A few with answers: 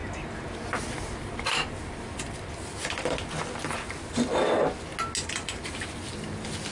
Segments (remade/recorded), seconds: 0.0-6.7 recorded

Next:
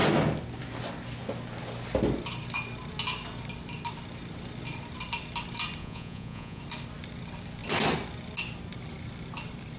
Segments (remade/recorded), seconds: 0.0-5.8 recorded; 5.8-6.6 remade; 6.6-9.8 recorded

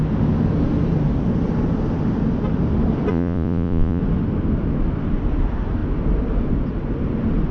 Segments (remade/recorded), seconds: 0.0-3.1 recorded; 3.1-4.0 remade; 4.0-7.5 recorded

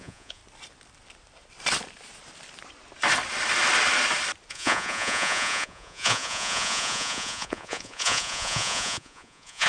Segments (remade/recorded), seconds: 0.0-0.4 remade; 0.4-4.5 recorded; 4.5-9.7 remade

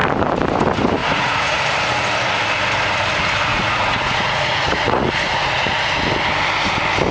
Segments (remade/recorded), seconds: 0.0-1.0 recorded; 1.0-1.6 remade; 1.6-3.5 recorded; 3.5-5.9 remade; 5.9-7.1 recorded

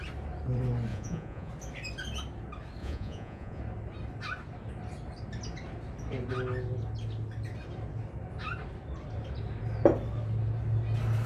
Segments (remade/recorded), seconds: 0.0-0.9 recorded; 0.9-1.5 remade; 1.5-2.8 recorded; 2.8-3.6 remade; 3.6-11.3 recorded